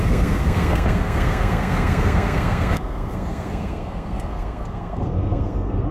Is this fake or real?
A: fake